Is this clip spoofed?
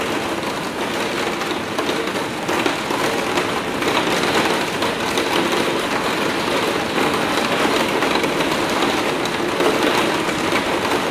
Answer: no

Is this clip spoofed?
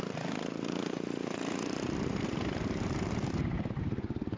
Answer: yes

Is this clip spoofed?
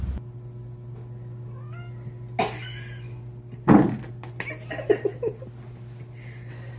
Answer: no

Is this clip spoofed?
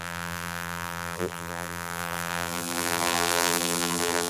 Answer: yes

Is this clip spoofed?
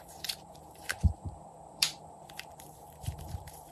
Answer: yes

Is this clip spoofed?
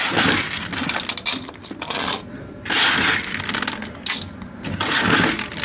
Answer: no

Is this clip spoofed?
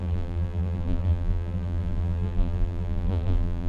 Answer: yes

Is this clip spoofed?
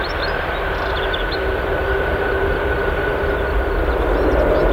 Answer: no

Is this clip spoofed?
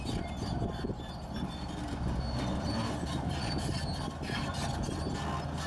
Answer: no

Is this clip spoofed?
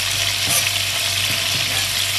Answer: no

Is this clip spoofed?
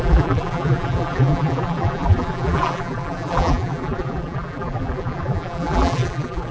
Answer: yes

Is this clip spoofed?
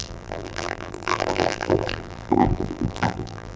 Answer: yes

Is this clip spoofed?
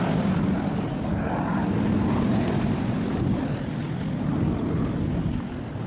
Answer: no